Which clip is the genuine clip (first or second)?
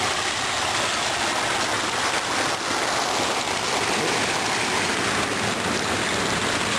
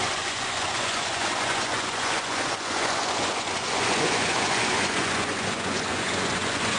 first